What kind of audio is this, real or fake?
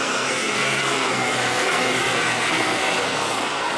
fake